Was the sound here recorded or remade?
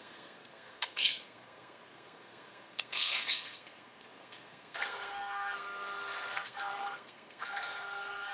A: remade